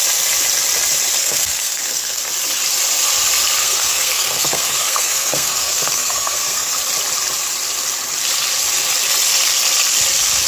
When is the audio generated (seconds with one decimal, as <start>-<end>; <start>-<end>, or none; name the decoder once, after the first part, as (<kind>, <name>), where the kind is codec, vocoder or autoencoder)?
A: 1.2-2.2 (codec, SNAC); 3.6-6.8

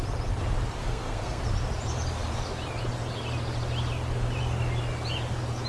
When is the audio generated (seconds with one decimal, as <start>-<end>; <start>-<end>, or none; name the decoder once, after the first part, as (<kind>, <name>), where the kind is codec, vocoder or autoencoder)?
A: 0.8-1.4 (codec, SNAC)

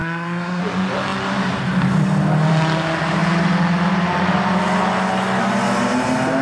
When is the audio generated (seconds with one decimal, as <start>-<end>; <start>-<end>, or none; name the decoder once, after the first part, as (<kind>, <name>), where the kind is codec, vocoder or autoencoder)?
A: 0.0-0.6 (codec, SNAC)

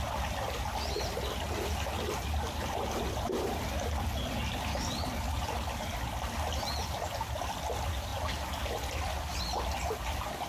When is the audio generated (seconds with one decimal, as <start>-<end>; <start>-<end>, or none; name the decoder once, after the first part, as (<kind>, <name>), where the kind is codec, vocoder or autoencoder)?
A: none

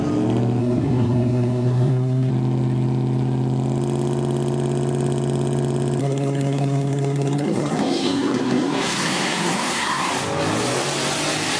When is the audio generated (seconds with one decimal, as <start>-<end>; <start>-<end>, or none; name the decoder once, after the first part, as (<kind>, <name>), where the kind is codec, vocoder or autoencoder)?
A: 0.6-2.3 (codec, SNAC); 6.0-10.1

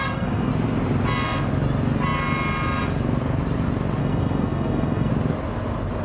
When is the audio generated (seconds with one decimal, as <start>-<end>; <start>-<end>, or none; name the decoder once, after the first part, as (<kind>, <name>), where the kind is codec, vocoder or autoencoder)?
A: 0.0-0.5 (codec, SNAC); 4.0-5.1